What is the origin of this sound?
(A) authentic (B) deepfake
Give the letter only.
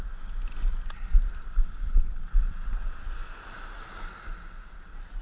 A